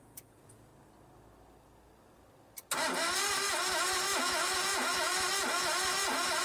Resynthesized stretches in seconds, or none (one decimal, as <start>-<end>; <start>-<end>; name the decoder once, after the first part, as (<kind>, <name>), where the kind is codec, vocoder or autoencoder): 0.0-0.7 (vocoder, Vocos); 4.2-5.1; 5.8-6.4